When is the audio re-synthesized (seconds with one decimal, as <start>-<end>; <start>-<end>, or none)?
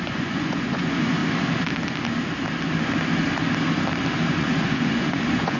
0.0-1.2; 4.3-5.6